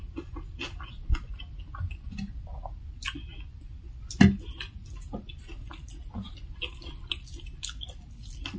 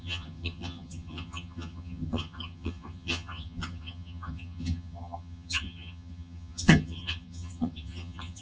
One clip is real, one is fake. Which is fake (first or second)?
second